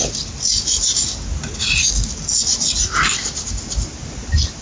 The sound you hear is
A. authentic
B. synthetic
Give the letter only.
A